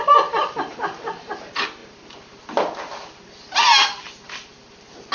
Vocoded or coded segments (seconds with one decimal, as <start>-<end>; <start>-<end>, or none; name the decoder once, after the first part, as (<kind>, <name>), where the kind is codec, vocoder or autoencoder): none